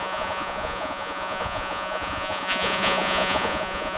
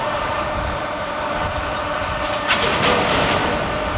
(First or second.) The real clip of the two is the second